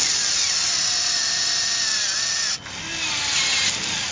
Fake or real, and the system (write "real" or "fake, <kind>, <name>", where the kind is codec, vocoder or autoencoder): real